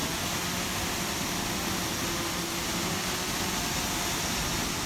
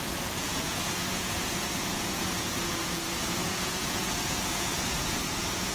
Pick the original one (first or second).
first